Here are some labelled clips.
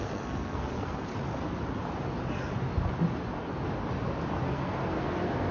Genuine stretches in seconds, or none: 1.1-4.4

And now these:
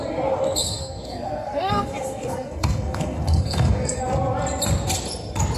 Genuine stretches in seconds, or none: 0.0-0.6; 4.0-5.6